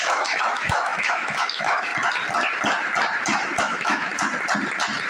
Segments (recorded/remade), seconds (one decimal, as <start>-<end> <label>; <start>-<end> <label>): 0.0-1.9 remade; 1.9-3.6 recorded; 3.6-4.1 remade; 4.1-5.1 recorded